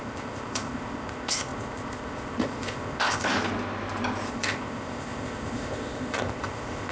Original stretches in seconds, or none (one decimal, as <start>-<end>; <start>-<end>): 3.3-4.3